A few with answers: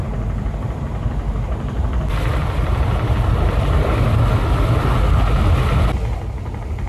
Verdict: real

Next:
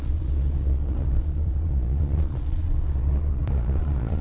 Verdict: fake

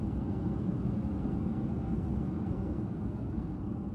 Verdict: fake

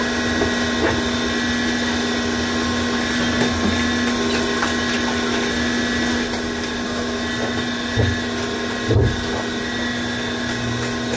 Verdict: real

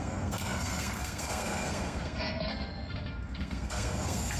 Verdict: fake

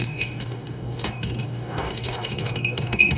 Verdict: fake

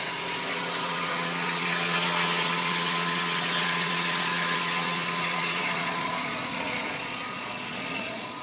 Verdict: fake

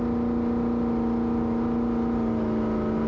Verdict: real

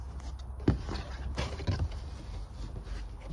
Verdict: real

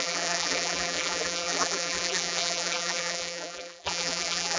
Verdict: fake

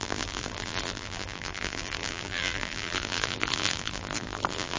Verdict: fake